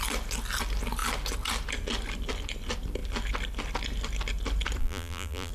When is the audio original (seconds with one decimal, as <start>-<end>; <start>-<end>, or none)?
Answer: 0.0-4.8